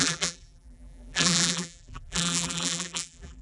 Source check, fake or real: fake